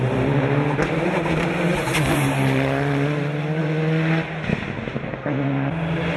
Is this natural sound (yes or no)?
yes